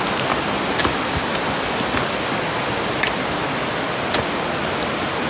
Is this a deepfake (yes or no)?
no